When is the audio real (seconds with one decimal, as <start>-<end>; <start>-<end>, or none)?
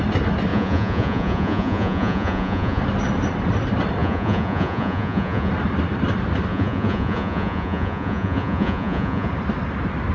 0.0-0.5; 2.8-4.0; 5.5-6.5; 9.3-10.1